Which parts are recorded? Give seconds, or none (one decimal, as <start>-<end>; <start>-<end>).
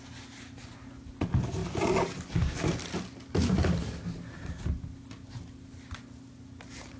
0.0-7.0